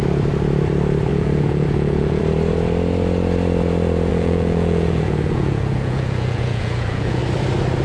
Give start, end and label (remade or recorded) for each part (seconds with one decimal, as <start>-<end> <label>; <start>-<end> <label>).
0.0-1.1 recorded; 1.1-2.2 remade; 2.2-4.1 recorded; 4.1-7.2 remade; 7.2-7.8 recorded